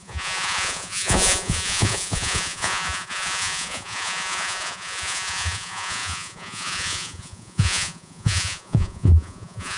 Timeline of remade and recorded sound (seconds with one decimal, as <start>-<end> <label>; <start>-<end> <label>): 0.0-9.8 remade